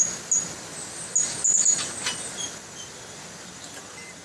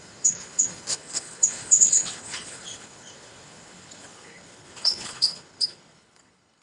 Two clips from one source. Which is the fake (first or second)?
second